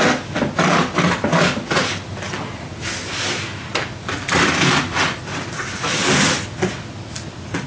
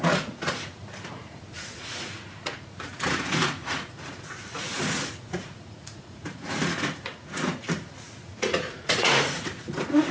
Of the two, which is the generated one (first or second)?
second